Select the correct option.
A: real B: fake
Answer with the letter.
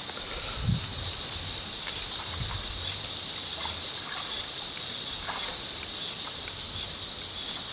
A